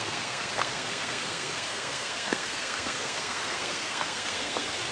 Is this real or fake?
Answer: fake